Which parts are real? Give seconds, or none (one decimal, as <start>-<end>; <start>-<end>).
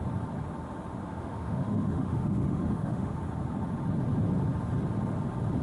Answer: 0.0-1.0; 3.2-5.6